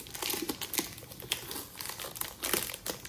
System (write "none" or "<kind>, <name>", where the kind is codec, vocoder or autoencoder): none